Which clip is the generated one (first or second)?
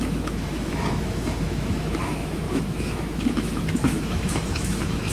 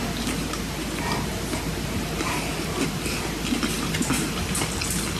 first